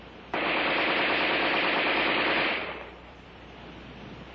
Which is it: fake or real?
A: fake